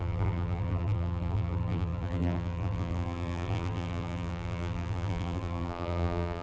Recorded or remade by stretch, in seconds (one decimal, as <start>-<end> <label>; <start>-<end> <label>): 0.0-6.4 remade